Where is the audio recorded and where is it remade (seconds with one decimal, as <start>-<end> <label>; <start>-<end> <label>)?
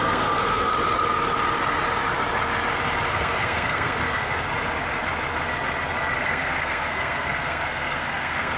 0.0-0.7 remade; 0.7-3.1 recorded; 3.1-4.5 remade; 4.5-6.2 recorded; 6.2-8.6 remade